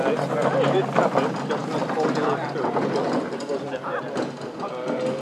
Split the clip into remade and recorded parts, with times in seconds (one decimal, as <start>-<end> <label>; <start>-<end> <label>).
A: 0.0-1.6 recorded; 1.6-4.0 remade; 4.0-5.2 recorded